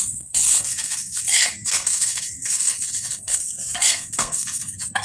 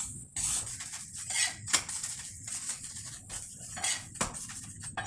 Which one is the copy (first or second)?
first